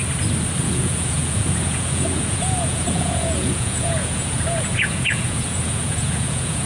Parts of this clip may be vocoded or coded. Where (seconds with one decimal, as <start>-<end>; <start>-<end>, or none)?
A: 0.6-6.7